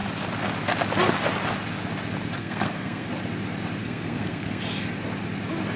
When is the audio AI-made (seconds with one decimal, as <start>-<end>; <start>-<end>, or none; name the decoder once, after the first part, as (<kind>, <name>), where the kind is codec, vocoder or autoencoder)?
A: 2.4-3.1 (codec, SNAC); 3.8-4.6